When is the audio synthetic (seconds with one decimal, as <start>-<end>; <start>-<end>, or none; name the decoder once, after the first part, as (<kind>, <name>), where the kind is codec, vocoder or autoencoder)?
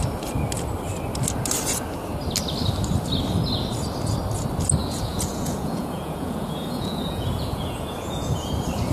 4.8-8.5 (vocoder, Vocos)